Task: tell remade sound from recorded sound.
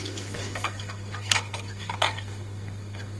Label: remade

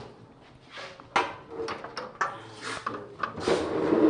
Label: recorded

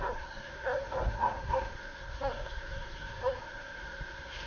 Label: remade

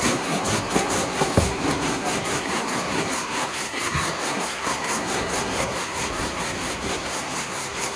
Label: remade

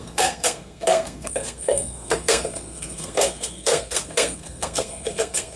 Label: remade